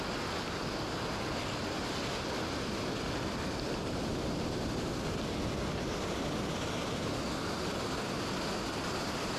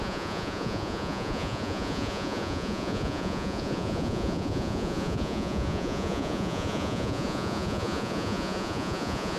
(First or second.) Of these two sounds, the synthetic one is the second